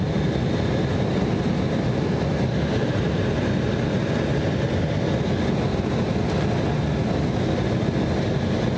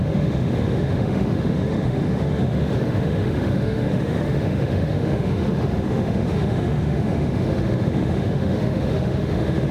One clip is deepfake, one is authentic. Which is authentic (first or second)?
first